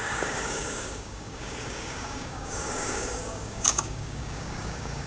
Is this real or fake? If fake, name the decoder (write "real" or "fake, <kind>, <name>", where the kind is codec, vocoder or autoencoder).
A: fake, codec, DAC